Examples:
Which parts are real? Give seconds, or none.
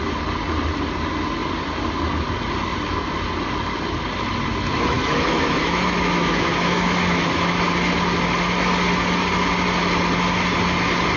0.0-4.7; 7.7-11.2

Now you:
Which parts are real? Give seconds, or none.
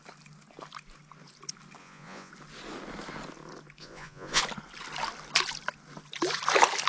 0.0-1.8; 2.3-3.8; 4.4-6.9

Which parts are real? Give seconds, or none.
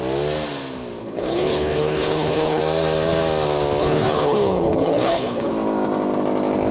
0.0-1.0; 2.6-3.8; 5.5-6.7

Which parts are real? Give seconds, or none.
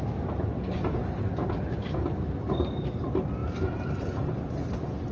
0.0-3.4